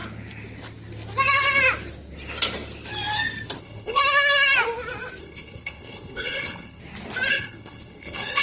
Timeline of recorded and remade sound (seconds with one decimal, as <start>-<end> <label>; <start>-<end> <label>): 0.0-3.6 recorded; 3.6-4.0 remade; 4.0-5.2 recorded; 5.2-6.8 remade; 6.8-7.3 recorded; 7.3-8.4 remade